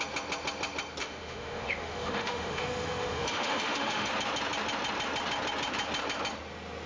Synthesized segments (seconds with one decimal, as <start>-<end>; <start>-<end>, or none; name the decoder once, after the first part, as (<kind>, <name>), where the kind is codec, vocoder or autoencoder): 1.0-4.1 (autoencoder, DAC-VAE)